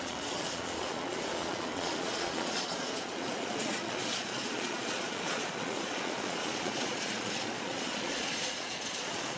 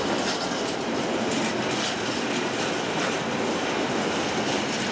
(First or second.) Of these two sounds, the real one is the second